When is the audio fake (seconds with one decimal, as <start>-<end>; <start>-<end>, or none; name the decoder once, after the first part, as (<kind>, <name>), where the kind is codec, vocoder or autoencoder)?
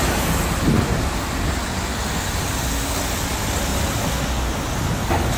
none